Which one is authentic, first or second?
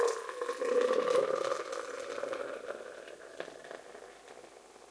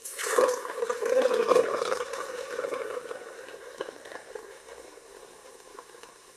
first